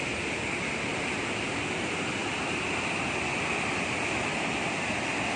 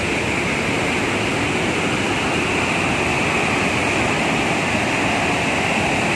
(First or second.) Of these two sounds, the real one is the second